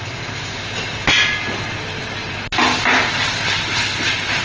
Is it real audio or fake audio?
real